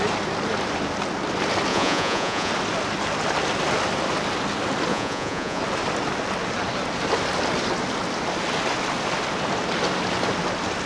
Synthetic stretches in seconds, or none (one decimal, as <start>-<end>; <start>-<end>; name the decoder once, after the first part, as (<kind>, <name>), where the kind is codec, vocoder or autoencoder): 1.7-2.5 (vocoder, Vocos); 4.9-5.6